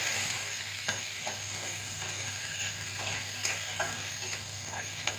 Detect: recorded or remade remade